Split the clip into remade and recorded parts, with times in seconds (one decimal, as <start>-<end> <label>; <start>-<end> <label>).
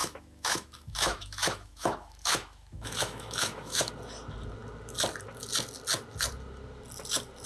0.0-3.9 remade; 3.9-7.5 recorded